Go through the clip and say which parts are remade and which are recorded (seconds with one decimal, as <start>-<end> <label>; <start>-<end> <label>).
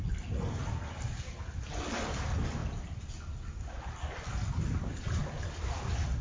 0.0-6.2 recorded